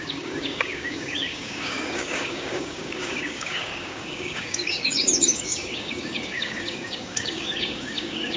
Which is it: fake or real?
fake